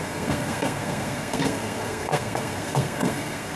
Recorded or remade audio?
remade